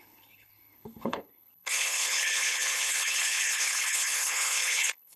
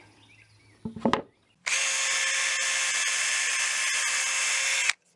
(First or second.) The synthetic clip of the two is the first